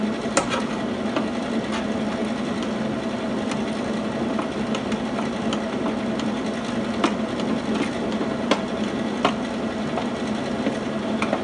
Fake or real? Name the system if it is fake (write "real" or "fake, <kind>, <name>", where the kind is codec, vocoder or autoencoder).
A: real